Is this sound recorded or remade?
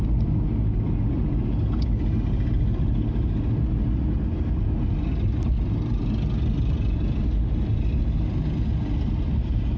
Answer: recorded